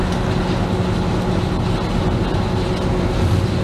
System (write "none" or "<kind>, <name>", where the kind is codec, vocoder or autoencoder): none